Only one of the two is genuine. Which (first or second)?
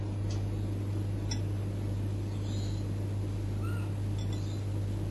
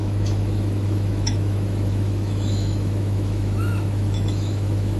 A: first